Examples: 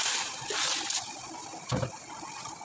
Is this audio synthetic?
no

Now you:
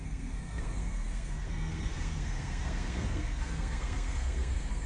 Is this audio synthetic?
yes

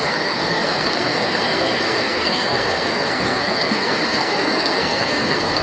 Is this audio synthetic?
yes